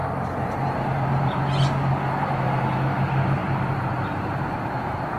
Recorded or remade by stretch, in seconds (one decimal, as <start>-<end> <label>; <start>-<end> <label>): 0.0-2.2 recorded; 2.2-3.4 remade; 3.4-5.2 recorded